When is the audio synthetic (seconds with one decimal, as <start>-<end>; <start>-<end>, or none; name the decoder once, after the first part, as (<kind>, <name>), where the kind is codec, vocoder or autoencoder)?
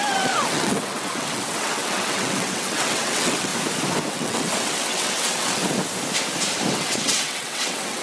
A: 0.0-3.5 (vocoder, WaveNeXt); 4.1-5.6; 6.7-8.0